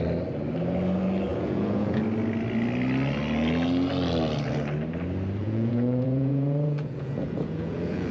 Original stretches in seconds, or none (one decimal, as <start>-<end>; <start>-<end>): 0.0-1.3; 2.0-5.4